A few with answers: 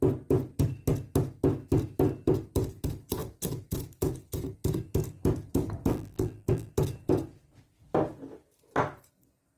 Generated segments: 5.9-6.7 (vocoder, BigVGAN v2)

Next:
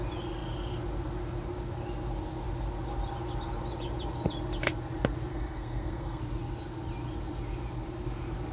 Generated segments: 5.3-6.2 (codec, SNAC)

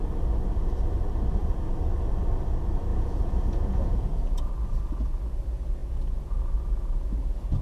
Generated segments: 2.9-4.5 (vocoder, Vocos); 5.8-6.4